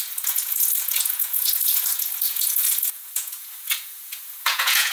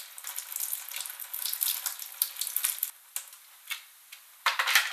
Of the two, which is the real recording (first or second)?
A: second